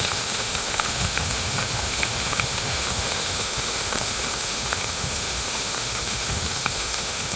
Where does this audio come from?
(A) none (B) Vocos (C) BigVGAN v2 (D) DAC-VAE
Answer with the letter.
D